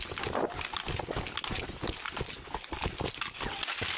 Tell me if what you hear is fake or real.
real